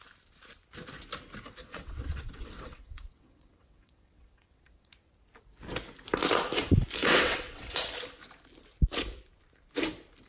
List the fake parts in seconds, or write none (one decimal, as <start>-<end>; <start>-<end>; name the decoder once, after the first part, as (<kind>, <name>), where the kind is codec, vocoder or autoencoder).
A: 1.6-5.1 (vocoder, WaveNeXt); 7.0-7.8